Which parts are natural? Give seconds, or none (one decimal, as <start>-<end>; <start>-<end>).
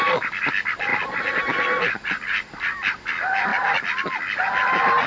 0.0-5.1